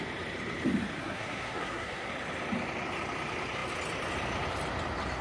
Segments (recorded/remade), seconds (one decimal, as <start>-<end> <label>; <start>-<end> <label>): 0.0-1.0 recorded; 1.0-2.1 remade; 2.1-5.2 recorded